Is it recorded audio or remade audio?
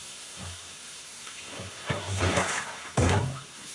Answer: remade